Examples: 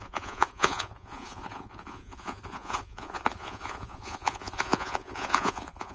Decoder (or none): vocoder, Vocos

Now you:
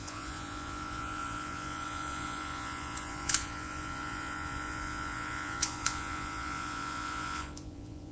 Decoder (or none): vocoder, Vocos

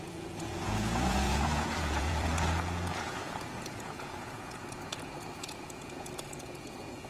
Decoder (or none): vocoder, Vocos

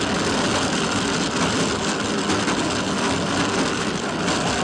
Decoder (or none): none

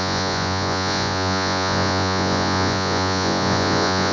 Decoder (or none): vocoder, Vocos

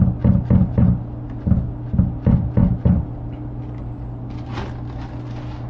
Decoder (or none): none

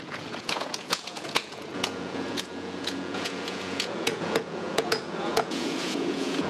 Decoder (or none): vocoder, Vocos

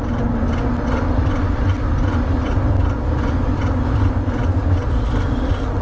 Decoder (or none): none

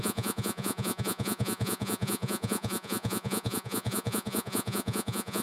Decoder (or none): vocoder, Vocos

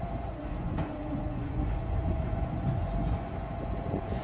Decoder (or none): vocoder, Vocos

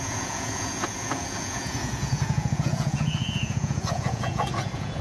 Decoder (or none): vocoder, Vocos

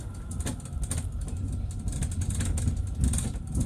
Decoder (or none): none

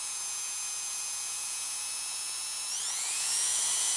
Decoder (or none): vocoder, Vocos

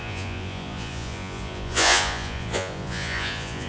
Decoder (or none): vocoder, Vocos